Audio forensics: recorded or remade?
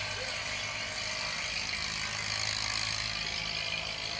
recorded